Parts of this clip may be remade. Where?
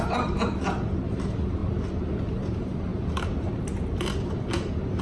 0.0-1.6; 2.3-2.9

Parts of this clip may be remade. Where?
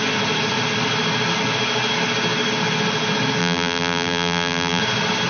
3.4-4.8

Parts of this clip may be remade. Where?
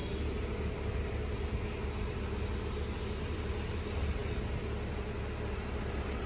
none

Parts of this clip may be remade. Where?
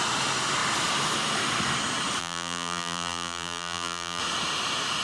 2.2-4.2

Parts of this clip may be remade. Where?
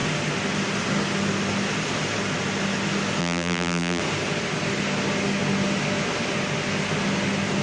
3.2-4.0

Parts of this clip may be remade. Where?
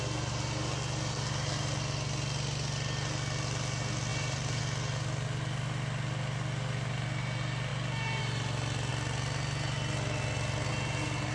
4.1-4.6